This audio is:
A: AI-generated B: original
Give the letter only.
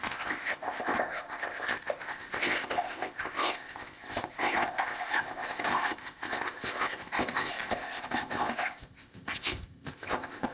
A